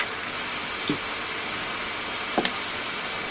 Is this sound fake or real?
real